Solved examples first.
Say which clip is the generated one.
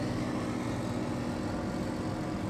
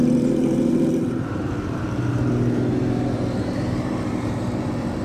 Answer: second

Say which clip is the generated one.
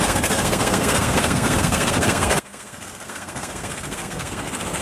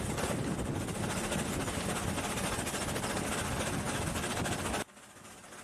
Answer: first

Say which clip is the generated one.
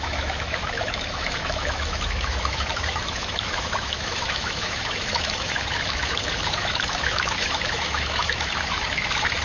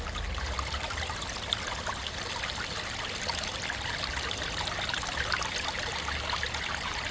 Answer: first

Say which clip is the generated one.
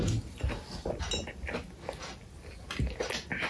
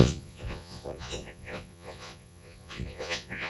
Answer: second